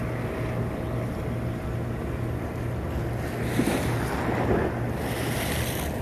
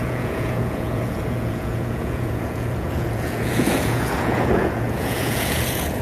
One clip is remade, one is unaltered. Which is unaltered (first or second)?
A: first